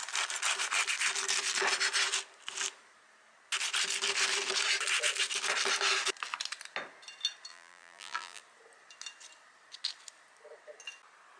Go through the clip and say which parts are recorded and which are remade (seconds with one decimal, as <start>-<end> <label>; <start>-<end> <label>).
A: 0.0-7.5 recorded; 7.5-8.4 remade; 8.4-11.4 recorded